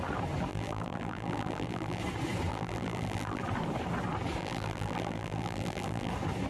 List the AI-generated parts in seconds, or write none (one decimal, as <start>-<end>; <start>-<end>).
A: 0.5-2.0; 2.5-3.4; 4.4-6.1